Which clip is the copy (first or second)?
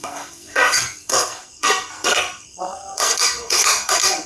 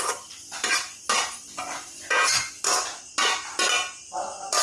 first